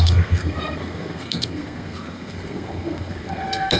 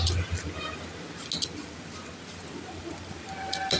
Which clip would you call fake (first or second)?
first